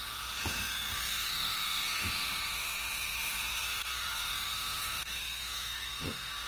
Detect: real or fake fake